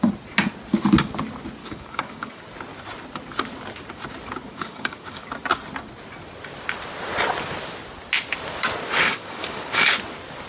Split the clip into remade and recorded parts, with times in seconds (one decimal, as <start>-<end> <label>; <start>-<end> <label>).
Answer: 0.0-1.6 recorded; 1.6-2.4 remade; 2.4-4.5 recorded; 4.5-5.3 remade; 5.3-9.1 recorded; 9.1-9.9 remade; 9.9-10.5 recorded